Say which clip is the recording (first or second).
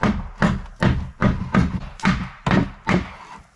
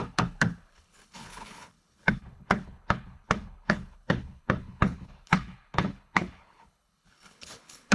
first